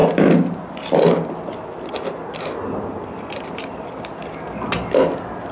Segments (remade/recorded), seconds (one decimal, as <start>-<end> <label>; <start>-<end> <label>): 0.0-5.5 recorded